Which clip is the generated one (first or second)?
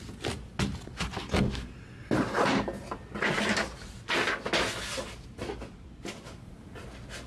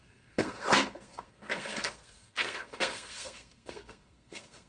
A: second